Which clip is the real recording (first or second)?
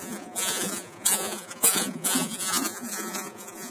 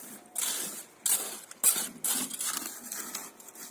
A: second